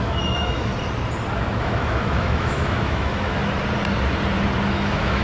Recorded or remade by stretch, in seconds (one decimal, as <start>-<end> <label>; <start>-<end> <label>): 0.0-0.7 remade; 0.7-1.4 recorded; 1.4-3.4 remade; 3.4-4.7 recorded; 4.7-5.2 remade